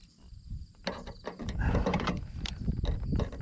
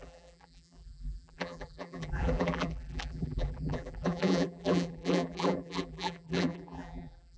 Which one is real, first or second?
first